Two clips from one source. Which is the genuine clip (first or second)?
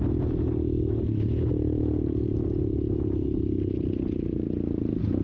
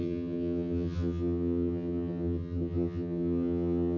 first